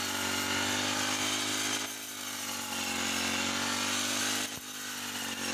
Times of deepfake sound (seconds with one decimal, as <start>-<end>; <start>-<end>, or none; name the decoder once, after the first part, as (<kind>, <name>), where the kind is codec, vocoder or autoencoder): none